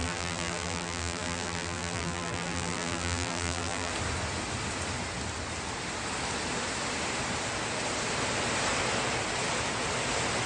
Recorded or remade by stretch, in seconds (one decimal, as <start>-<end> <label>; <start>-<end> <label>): 0.0-3.9 remade; 3.9-10.5 recorded